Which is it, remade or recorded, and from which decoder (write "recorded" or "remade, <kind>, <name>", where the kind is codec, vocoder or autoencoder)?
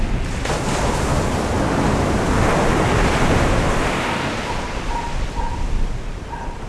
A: recorded